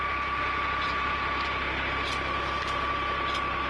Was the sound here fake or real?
real